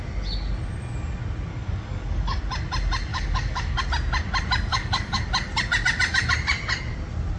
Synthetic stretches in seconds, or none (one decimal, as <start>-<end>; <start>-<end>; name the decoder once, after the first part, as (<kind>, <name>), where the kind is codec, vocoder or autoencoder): 1.5-2.4 (codec, DAC); 3.1-3.8; 4.7-5.2